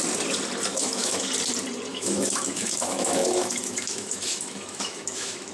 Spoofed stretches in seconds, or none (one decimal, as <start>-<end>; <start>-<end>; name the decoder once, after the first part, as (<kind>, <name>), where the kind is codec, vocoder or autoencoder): 0.7-1.3 (autoencoder, DAC-VAE); 1.9-5.5